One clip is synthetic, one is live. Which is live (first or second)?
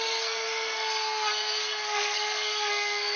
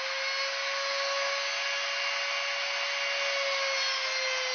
second